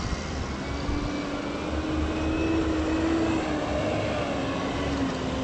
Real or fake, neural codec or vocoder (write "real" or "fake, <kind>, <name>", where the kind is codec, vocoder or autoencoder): real